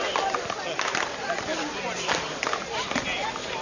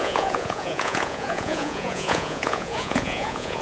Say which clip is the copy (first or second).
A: second